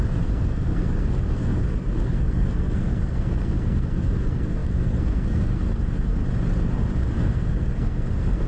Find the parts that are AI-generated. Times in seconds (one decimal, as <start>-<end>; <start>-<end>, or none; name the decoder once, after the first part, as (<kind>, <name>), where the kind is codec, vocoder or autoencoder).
0.0-6.2 (codec, SNAC); 7.1-8.5